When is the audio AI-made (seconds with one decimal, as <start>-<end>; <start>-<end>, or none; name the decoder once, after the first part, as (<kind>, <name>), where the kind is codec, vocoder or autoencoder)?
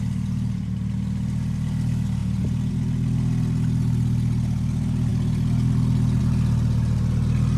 none